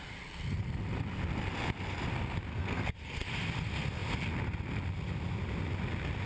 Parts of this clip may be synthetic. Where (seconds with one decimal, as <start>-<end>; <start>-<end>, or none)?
2.5-3.3